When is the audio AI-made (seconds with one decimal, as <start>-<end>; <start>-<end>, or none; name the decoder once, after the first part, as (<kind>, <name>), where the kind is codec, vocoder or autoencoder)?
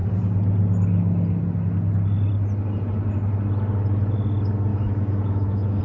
4.7-5.8 (autoencoder, DAC-VAE)